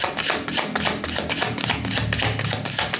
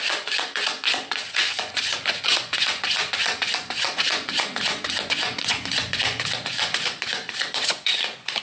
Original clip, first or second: first